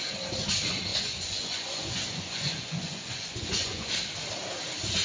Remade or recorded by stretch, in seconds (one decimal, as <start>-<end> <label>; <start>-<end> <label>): 0.0-0.9 recorded; 0.9-3.9 remade; 3.9-5.0 recorded